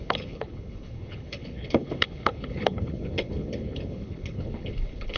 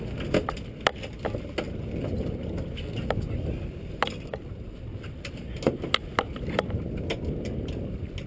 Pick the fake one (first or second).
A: first